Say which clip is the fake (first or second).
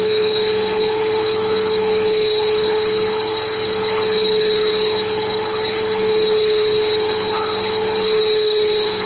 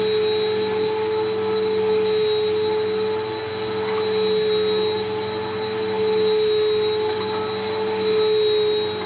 first